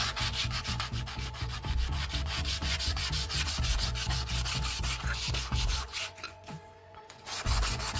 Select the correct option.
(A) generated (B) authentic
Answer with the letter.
A